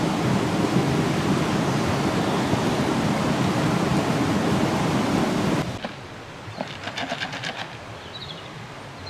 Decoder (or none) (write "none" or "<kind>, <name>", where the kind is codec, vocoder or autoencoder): none